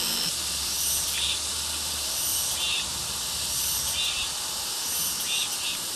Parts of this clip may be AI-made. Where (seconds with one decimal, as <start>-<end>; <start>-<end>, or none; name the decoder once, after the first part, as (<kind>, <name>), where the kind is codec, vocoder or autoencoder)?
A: none

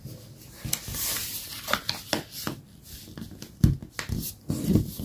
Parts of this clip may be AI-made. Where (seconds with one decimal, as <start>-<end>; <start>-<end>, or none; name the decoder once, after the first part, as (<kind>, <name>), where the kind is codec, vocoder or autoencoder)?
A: none

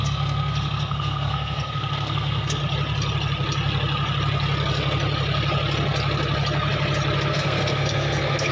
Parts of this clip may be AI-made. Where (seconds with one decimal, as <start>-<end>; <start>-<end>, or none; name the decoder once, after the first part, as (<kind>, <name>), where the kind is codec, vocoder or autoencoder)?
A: 0.0-2.6 (codec, SNAC); 7.3-8.5